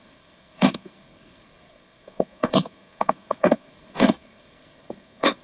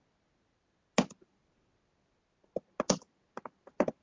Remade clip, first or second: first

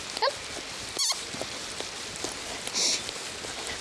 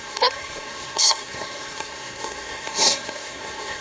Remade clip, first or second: second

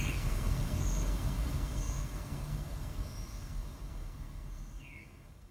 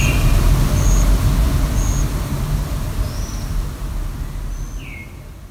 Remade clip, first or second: first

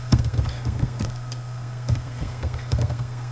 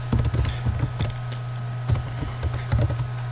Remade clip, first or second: first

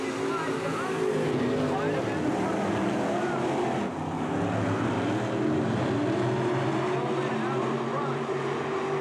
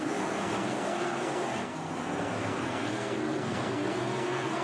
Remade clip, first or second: second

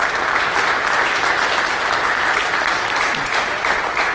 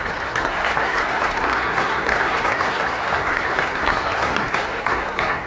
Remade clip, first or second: second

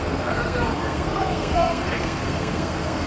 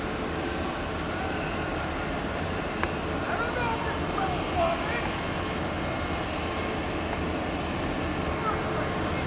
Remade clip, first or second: first